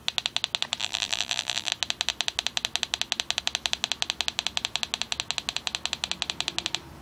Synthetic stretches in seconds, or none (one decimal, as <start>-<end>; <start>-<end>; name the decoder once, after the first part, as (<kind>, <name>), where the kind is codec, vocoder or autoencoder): 0.8-1.7 (vocoder, BigVGAN v2)